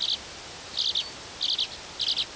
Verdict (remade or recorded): recorded